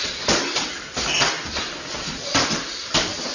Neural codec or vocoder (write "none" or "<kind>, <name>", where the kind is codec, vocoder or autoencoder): none